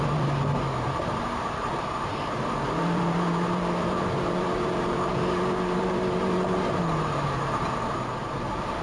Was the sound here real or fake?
fake